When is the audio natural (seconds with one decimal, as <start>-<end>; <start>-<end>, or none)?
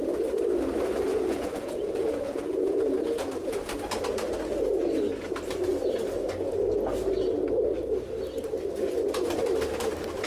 0.0-1.1; 3.6-10.3